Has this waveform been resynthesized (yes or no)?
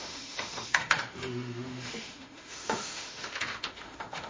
yes